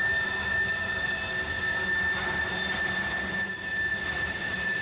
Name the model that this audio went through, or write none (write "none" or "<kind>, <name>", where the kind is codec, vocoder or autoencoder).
none